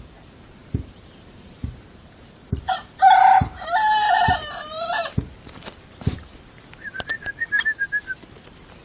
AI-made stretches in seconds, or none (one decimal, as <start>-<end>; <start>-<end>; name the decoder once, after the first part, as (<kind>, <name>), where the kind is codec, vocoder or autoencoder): 0.6-5.2 (vocoder, BigVGAN v2); 6.1-7.1